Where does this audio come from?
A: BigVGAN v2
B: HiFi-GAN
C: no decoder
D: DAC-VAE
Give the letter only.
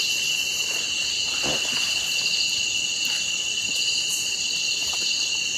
C